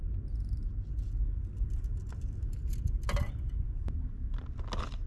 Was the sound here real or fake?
real